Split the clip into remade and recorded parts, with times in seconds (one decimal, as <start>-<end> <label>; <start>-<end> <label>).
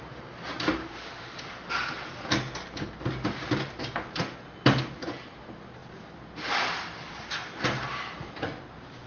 0.0-0.8 recorded; 0.8-1.4 remade; 1.4-9.1 recorded